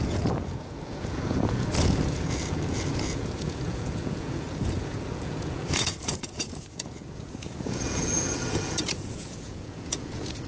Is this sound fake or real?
fake